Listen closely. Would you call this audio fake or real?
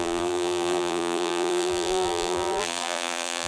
fake